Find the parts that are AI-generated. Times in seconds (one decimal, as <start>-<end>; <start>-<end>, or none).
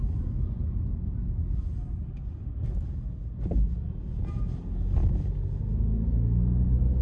none